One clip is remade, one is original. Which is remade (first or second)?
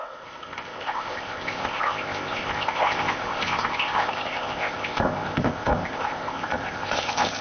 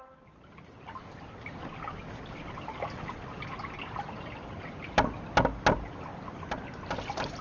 first